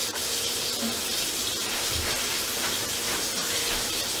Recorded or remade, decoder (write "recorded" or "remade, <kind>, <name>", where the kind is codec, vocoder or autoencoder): remade, vocoder, BigVGAN v2